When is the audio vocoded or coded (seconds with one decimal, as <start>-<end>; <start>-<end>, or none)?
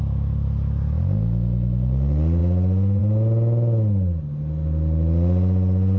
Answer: none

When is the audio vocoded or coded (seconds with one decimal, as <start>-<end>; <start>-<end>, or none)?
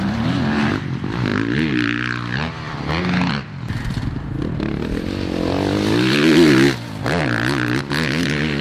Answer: none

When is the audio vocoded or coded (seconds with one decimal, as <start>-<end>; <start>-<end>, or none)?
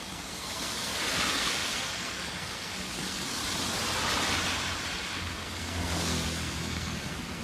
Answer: 0.0-3.4; 5.1-7.4